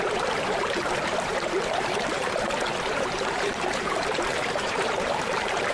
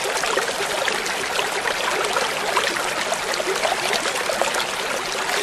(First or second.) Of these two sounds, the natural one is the second